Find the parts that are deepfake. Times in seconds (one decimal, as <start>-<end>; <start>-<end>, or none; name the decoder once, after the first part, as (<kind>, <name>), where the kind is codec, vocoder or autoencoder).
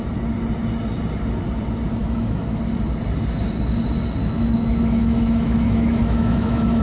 2.0-2.6 (autoencoder, DAC-VAE); 4.2-6.8